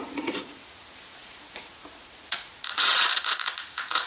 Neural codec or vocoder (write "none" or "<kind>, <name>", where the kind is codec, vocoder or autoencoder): vocoder, Vocos